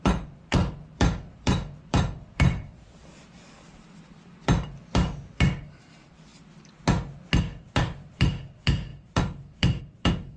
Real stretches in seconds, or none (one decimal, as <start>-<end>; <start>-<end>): 6.3-7.6